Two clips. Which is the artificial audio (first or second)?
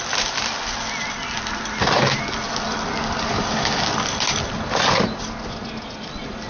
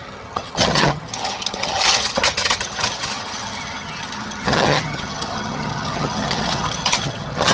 second